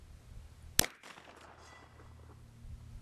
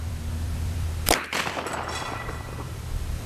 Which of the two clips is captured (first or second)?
first